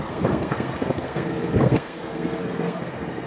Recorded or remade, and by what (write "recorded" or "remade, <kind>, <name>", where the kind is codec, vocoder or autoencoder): remade, codec, SNAC